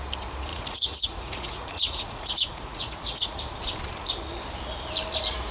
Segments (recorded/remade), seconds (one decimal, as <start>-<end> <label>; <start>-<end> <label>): 0.0-0.5 recorded; 0.5-3.4 remade; 3.4-5.5 recorded